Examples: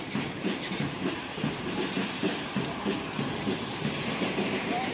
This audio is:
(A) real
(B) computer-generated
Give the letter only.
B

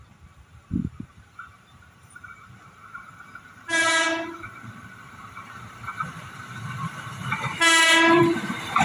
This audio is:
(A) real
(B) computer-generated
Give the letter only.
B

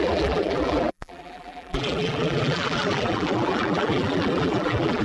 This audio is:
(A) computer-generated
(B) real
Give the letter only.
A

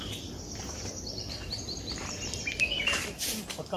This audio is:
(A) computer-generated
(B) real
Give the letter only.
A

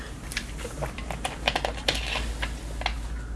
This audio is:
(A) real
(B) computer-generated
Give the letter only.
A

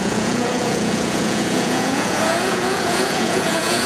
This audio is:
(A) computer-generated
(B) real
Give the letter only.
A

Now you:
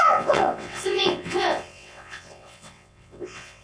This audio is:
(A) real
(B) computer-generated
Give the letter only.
B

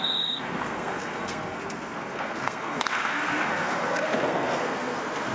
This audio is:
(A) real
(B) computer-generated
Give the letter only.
B